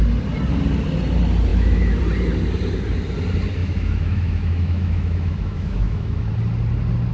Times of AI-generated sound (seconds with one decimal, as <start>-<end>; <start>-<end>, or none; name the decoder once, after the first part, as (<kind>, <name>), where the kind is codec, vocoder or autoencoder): 1.5-2.0 (autoencoder, DAC-VAE); 3.6-6.3